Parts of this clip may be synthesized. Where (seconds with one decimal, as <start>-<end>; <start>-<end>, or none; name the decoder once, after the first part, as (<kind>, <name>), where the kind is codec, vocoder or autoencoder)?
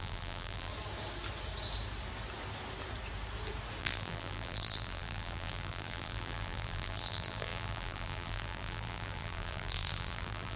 0.0-0.7 (vocoder, BigVGAN v2); 3.8-10.6